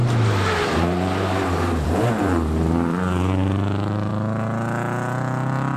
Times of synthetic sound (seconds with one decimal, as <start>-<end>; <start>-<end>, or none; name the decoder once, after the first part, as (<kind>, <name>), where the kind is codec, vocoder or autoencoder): 0.0-4.1 (vocoder, BigVGAN v2)